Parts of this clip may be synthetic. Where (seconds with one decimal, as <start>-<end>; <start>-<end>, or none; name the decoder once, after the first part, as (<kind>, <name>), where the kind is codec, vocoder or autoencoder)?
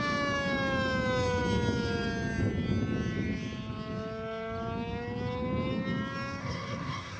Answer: 6.4-7.2 (codec, SNAC)